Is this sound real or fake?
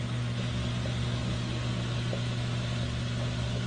real